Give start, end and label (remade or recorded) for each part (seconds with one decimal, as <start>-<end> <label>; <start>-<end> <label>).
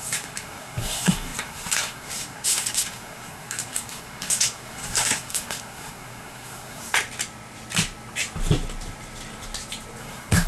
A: 0.0-6.9 remade; 6.9-10.0 recorded; 10.0-10.5 remade